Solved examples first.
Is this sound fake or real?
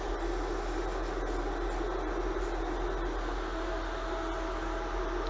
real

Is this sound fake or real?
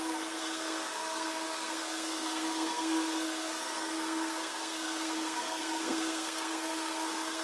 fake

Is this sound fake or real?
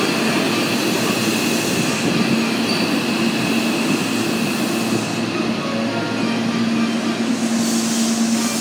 real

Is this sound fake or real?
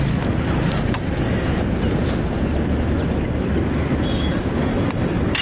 real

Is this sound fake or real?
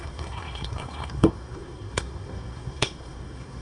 fake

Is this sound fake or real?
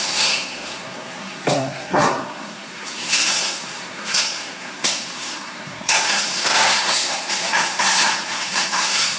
fake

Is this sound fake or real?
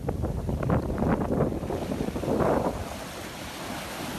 real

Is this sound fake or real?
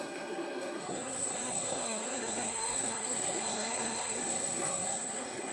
fake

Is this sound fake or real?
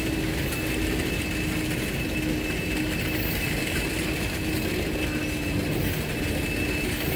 real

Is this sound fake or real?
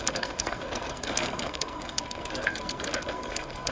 fake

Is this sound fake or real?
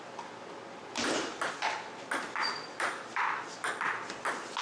real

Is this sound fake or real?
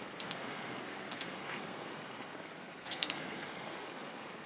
fake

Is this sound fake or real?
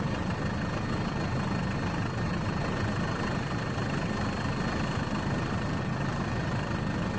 real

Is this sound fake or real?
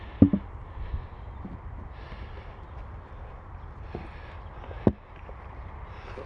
real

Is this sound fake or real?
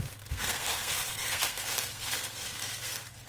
fake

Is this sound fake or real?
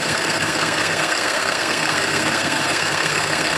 fake